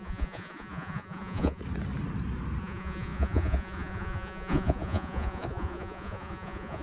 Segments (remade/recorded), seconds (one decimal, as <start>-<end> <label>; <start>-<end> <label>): 0.0-1.6 remade; 1.6-2.6 recorded; 2.6-6.8 remade